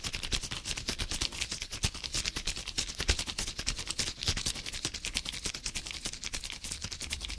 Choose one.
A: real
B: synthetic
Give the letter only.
A